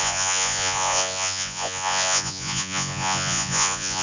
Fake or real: fake